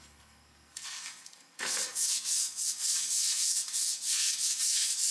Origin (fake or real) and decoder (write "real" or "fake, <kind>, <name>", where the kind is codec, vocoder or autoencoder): fake, codec, SNAC